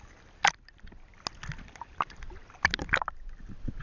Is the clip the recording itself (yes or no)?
yes